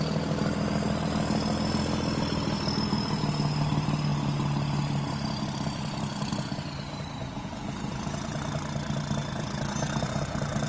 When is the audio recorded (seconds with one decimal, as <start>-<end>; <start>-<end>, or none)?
0.0-7.2; 8.4-9.2